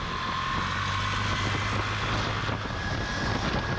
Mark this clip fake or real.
real